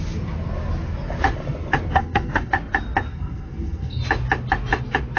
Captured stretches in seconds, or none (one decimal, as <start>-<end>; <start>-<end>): 0.0-1.9; 2.5-3.1; 4.0-5.2